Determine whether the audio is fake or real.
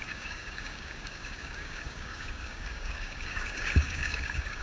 fake